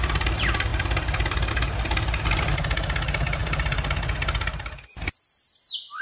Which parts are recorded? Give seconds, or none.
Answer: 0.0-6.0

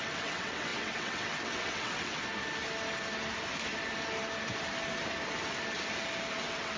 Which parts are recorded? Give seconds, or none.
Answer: 2.2-6.3

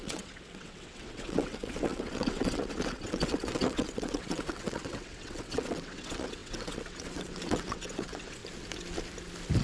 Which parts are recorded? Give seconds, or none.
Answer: 8.4-9.6

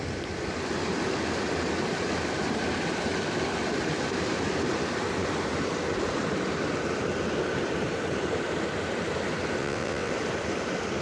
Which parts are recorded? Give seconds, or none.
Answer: 0.0-9.6; 10.1-11.0